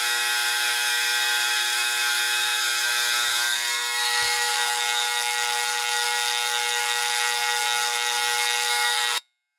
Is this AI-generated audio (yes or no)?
yes